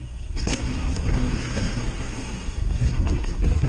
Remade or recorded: remade